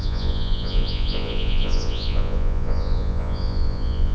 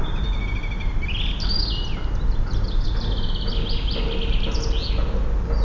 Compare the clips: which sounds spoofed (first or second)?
first